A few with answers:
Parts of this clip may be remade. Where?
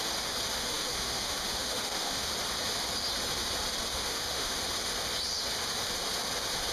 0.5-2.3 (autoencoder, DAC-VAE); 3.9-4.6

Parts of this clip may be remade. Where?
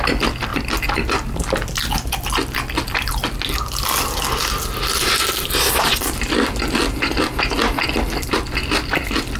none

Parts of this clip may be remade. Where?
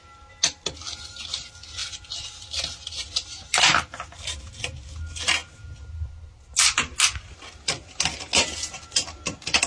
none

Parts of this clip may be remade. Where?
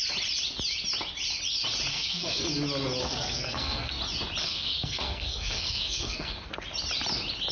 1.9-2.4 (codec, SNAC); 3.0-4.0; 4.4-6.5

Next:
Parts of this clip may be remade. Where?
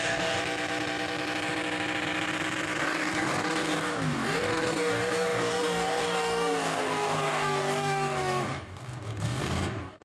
0.0-0.4 (codec, DAC); 2.8-10.0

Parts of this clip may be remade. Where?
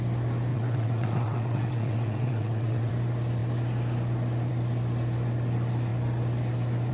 0.5-2.9 (vocoder, WaveNeXt)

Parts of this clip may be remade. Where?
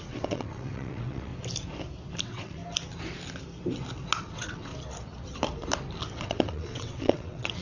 0.0-1.3 (vocoder, WaveNeXt); 2.2-2.6; 4.2-4.7; 6.1-7.6